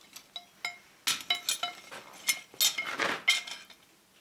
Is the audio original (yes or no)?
yes